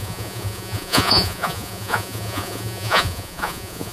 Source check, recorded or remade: remade